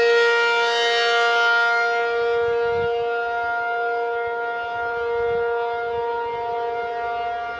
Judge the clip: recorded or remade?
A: recorded